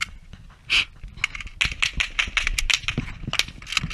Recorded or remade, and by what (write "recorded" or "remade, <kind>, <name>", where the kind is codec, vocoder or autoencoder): recorded